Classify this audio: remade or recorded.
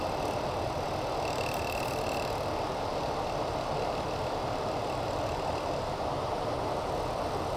remade